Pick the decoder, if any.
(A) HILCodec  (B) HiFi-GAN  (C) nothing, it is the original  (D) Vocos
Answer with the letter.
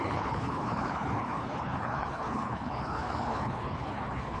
A